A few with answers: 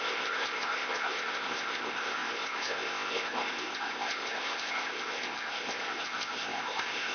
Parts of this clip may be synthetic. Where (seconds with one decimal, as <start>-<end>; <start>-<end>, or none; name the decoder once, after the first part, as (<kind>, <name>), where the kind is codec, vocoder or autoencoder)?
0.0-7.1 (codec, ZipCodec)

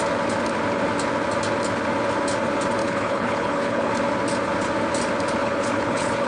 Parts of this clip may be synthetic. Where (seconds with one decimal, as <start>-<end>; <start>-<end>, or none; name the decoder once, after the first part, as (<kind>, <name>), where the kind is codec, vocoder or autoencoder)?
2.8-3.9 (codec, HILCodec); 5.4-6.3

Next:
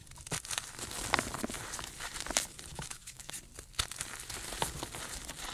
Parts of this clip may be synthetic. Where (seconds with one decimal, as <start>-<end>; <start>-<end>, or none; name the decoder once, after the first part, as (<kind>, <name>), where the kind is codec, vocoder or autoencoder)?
2.7-3.3 (autoencoder, DAC-VAE)